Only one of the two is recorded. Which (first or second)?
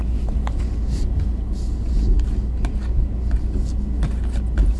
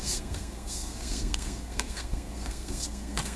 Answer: first